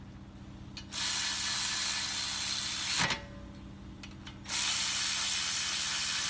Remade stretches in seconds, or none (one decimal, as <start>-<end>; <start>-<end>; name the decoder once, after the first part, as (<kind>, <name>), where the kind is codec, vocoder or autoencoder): none